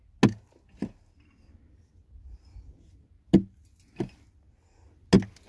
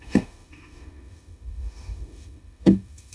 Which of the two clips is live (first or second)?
first